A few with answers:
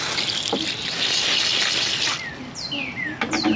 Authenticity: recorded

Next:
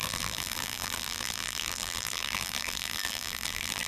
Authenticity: remade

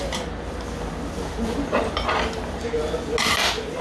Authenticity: recorded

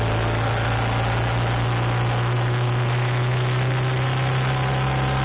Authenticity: recorded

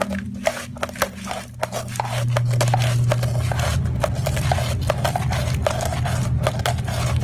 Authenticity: recorded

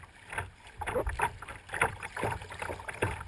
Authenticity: recorded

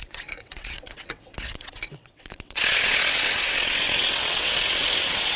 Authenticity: remade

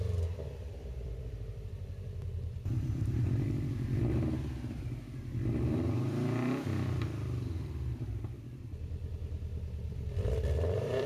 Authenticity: remade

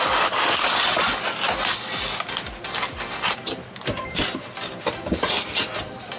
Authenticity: recorded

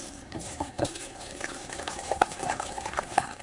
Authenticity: remade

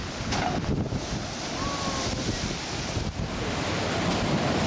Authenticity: recorded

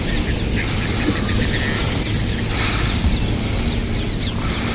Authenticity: recorded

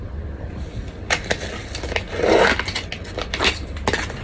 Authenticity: recorded